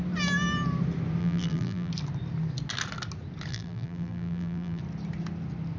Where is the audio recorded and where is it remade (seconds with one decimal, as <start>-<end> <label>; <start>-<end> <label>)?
0.0-1.2 recorded; 1.2-1.9 remade; 1.9-3.5 recorded; 3.5-4.8 remade; 4.8-5.8 recorded